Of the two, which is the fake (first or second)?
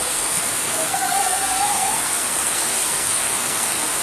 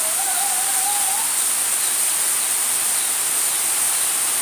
first